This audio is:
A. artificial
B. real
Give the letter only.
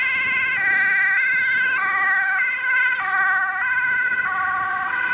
B